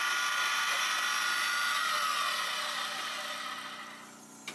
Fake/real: real